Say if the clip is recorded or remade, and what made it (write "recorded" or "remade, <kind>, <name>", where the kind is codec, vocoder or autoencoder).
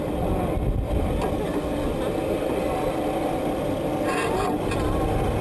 recorded